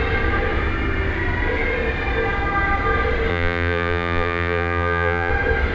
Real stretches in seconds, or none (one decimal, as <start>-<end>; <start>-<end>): 0.0-3.3; 5.3-5.7